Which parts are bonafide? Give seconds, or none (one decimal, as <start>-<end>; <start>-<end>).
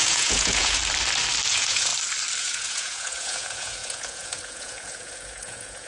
0.8-1.5; 1.9-2.4